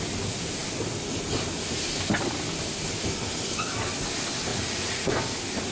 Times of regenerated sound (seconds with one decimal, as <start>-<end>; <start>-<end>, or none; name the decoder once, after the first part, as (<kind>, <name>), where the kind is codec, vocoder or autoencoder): 4.5-5.1 (vocoder, Vocos)